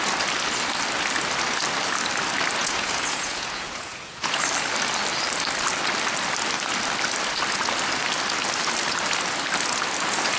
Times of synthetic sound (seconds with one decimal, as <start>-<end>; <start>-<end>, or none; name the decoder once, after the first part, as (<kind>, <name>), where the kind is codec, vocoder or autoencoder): 2.6-4.4 (vocoder, Vocos)

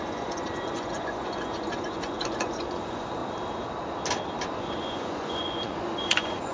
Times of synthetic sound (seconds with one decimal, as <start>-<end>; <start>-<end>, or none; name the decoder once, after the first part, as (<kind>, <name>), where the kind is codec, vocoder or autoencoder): 0.0-3.2 (vocoder, Vocos); 4.6-6.5

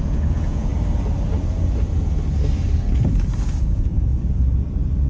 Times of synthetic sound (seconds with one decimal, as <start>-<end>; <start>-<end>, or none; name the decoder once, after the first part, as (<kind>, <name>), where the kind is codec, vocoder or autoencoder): 0.0-0.7 (vocoder, Vocos); 3.6-4.1

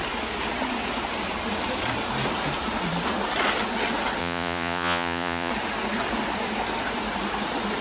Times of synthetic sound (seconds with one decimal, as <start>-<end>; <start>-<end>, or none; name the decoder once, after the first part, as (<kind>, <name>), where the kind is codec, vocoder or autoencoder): 4.2-5.5 (vocoder, Vocos)

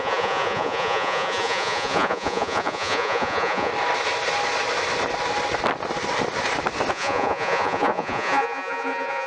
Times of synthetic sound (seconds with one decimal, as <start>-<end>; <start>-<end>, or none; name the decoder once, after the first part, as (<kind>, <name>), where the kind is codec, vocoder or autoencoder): 0.0-3.7 (vocoder, Vocos); 6.9-9.3

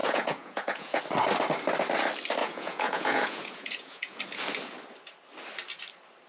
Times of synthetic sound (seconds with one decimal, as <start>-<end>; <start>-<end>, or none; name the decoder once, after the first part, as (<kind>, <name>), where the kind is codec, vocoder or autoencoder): 0.0-1.0 (vocoder, Vocos); 2.4-4.2

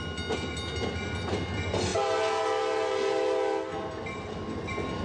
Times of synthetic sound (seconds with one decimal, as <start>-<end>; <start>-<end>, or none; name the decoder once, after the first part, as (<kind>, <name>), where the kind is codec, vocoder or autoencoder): none